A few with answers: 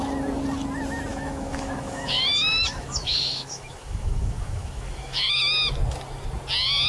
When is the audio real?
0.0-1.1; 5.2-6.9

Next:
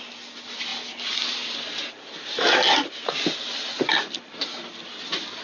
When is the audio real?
0.0-5.4